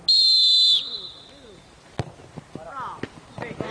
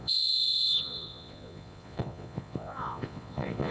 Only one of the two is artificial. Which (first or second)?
second